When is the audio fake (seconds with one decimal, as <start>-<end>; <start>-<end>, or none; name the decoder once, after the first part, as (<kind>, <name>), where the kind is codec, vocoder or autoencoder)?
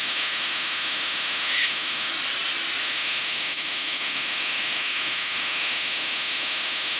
0.0-2.1 (autoencoder, DAC-VAE); 2.8-7.0